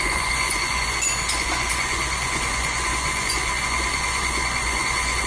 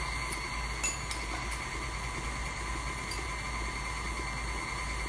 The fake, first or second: first